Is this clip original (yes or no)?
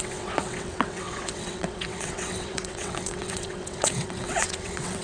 no